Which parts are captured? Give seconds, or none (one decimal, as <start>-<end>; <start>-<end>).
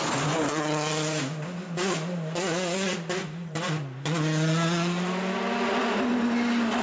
0.0-6.8